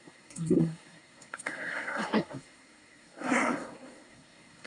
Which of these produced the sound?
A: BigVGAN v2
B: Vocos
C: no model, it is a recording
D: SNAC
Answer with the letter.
D